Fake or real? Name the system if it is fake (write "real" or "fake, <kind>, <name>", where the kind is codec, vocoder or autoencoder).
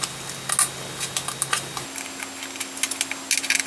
real